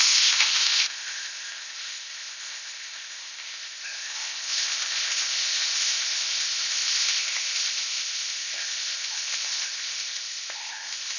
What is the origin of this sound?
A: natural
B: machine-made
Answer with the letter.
B